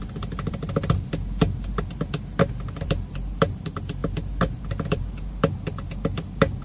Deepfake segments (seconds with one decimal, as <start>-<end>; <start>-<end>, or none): 0.0-6.6